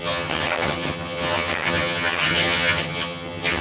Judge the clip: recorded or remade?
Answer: remade